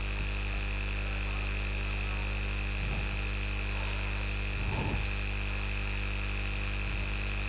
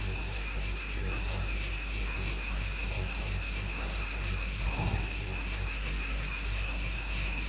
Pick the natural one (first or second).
first